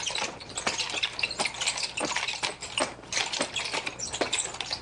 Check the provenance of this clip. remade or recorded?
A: recorded